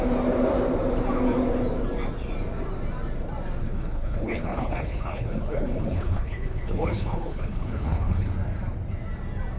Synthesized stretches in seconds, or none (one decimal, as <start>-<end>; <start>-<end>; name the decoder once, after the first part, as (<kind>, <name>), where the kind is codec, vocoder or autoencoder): 3.6-8.3 (codec, HILCodec)